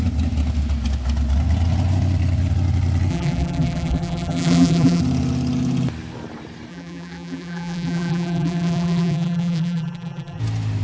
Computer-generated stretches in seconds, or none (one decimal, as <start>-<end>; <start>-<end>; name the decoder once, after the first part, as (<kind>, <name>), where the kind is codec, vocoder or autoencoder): 3.1-5.0 (vocoder, BigVGAN v2); 6.7-10.4